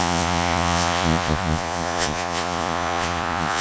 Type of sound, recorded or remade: remade